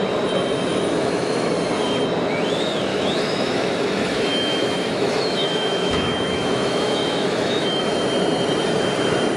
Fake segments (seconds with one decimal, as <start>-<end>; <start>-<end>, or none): 0.7-1.5; 2.9-7.8